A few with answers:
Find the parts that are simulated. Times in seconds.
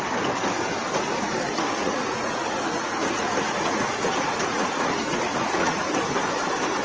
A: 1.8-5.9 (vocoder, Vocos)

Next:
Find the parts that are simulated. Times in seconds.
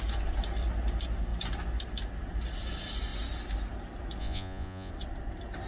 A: 4.2-4.9 (vocoder, Vocos)